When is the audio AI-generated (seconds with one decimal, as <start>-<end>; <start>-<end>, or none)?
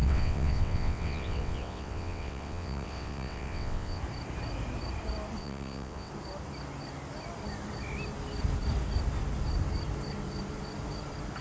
0.0-4.0; 5.4-6.1